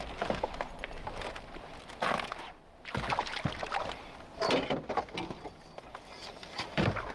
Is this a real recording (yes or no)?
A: yes